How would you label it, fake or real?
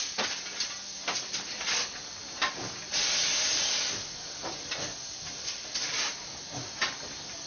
real